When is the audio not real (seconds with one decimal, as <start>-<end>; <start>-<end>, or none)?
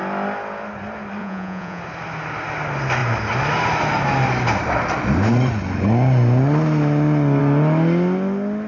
1.2-1.8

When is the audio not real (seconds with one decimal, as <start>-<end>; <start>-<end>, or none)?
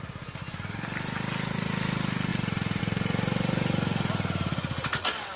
none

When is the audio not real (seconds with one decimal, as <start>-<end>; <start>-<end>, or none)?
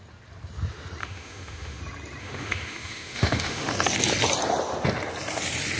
1.0-1.8; 2.2-3.7